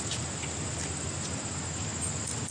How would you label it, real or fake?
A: real